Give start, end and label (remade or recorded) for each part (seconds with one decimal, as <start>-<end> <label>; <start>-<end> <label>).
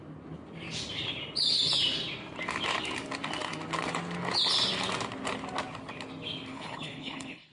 0.0-6.5 recorded; 6.5-7.5 remade